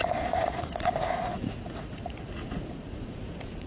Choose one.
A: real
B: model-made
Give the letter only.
B